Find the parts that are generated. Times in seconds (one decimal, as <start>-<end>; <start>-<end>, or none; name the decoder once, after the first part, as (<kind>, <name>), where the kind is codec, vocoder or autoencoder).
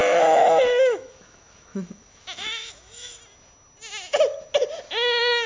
0.0-3.2 (autoencoder, DAC-VAE)